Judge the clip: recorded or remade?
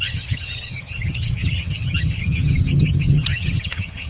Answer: remade